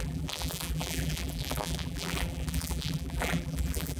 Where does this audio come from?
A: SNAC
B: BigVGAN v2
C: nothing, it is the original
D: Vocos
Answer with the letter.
B